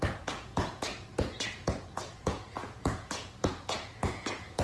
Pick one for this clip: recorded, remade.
remade